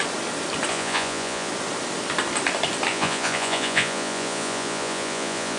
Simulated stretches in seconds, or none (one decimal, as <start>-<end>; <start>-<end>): 0.7-1.5; 2.9-5.6